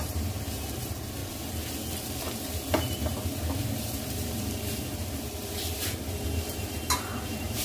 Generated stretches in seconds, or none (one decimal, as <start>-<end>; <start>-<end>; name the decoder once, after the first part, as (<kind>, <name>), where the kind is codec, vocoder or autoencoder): 0.0-1.2 (vocoder, BigVGAN v2); 2.3-7.6